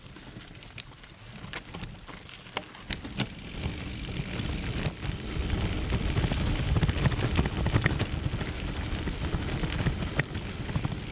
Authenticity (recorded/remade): recorded